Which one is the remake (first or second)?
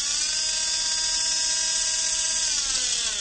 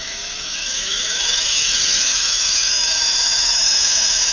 second